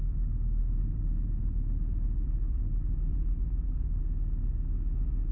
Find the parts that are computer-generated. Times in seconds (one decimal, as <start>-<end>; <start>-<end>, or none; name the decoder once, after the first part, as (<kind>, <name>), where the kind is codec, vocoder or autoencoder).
0.6-1.9 (vocoder, BigVGAN v2); 3.1-4.0